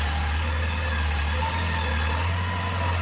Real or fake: real